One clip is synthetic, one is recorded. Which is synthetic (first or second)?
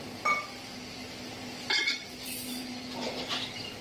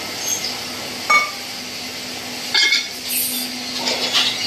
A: first